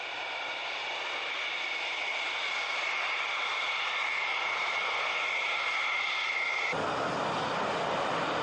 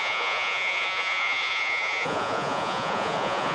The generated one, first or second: second